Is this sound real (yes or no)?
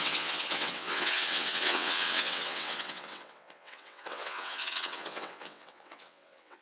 no